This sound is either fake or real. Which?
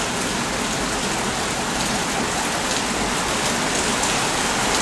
real